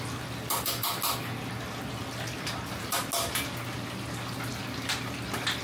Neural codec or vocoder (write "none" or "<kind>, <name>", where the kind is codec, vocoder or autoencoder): none